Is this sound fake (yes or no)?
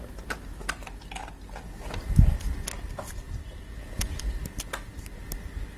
no